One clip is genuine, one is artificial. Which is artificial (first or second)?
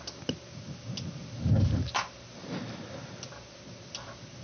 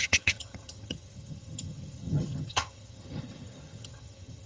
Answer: second